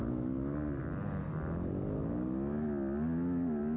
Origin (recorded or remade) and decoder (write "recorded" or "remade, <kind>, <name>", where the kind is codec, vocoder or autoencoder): recorded